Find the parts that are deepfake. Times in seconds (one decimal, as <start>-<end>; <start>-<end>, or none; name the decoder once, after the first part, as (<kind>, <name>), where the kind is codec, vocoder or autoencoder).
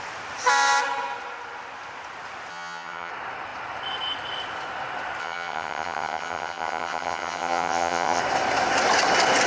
2.5-3.1 (vocoder, HiFi-GAN); 5.2-8.2